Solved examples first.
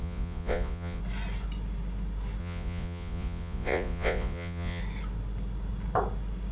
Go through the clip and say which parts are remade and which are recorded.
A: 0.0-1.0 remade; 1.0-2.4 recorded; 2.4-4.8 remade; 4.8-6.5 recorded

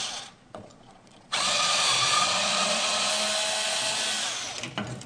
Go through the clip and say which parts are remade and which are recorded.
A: 0.0-3.1 remade; 3.1-5.1 recorded

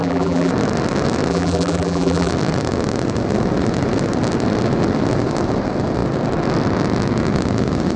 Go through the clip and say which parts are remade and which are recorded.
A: 0.0-0.5 remade; 0.5-1.3 recorded; 1.3-2.3 remade; 2.3-8.0 recorded

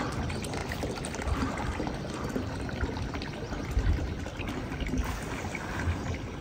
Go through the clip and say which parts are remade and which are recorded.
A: 0.0-6.4 recorded